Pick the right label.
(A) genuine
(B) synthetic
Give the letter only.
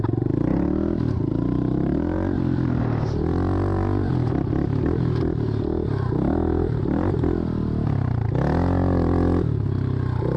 A